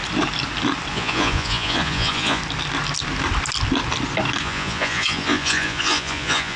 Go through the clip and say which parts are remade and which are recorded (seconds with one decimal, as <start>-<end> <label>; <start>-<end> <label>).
0.0-0.9 recorded; 0.9-2.4 remade; 2.4-4.4 recorded; 4.4-6.6 remade